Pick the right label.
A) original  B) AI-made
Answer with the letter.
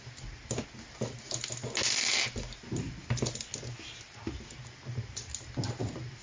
A